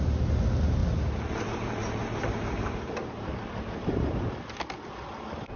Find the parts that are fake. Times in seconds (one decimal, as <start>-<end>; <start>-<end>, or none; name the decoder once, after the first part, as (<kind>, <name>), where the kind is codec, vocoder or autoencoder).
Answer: 0.8-4.2 (vocoder, BigVGAN v2)

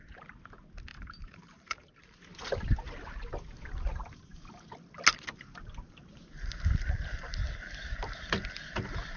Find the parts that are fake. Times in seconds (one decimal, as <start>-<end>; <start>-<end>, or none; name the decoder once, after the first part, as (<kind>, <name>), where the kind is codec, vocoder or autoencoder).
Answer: 0.9-1.9 (vocoder, BigVGAN v2)

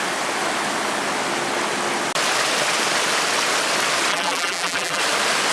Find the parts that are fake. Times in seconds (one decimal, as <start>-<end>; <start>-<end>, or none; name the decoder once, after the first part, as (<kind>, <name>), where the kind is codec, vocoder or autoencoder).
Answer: 4.1-5.0 (vocoder, BigVGAN v2)

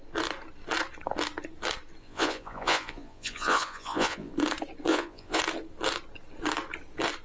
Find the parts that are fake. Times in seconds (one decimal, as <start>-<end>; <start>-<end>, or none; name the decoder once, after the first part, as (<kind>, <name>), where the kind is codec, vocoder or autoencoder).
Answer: 2.0-4.3 (vocoder, Vocos); 4.9-5.4

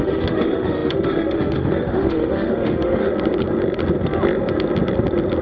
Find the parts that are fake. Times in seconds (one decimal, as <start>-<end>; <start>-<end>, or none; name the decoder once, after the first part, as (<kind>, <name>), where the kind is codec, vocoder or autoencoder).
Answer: 0.0-3.1 (autoencoder, DAC-VAE)

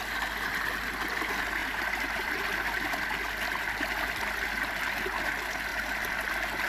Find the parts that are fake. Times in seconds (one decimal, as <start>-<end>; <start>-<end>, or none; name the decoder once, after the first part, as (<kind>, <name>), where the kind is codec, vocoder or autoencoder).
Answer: 1.6-2.3 (vocoder, BigVGAN v2)

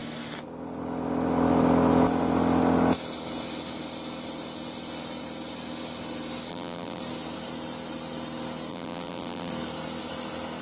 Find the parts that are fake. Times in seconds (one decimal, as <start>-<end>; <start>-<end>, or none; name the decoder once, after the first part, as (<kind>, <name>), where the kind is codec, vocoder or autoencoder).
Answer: 6.5-7.0 (vocoder, BigVGAN v2); 8.7-9.5

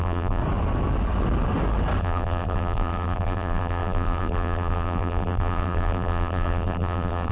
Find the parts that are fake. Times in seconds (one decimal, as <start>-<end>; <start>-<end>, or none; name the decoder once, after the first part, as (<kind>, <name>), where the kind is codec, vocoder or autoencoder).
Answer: 0.0-0.4 (vocoder, BigVGAN v2); 2.0-7.3